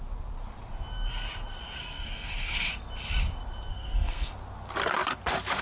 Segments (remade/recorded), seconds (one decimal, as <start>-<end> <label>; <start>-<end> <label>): 0.0-1.8 recorded; 1.8-2.7 remade; 2.7-3.7 recorded; 3.7-4.3 remade; 4.3-5.6 recorded